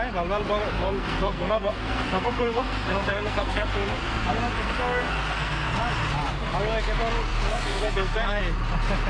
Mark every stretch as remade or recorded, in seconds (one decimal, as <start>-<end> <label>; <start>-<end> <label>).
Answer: 0.0-0.7 recorded; 0.7-5.8 remade; 5.8-7.3 recorded; 7.3-8.4 remade; 8.4-9.1 recorded